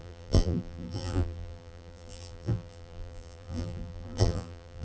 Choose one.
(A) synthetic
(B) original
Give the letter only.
A